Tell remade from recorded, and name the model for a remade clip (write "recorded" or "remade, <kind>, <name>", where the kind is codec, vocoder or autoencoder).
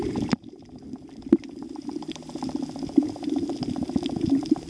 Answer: recorded